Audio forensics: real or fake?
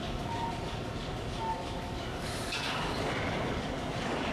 fake